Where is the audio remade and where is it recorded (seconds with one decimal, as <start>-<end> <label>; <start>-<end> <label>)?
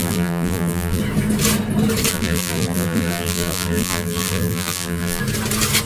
0.0-1.0 remade; 1.0-2.1 recorded; 2.1-5.2 remade; 5.2-5.9 recorded